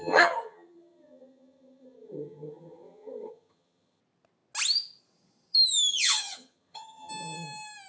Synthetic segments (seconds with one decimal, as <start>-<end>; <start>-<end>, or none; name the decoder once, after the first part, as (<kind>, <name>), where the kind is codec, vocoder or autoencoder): 0.0-4.0 (vocoder, HiFi-GAN); 5.9-7.1